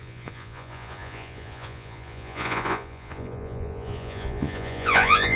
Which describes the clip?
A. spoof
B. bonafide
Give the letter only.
A